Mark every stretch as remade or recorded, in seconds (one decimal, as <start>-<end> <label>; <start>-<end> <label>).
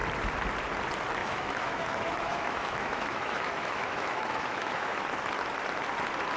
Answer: 0.0-1.2 recorded; 1.2-5.0 remade; 5.0-6.4 recorded